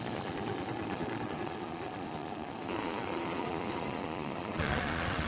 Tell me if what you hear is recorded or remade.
remade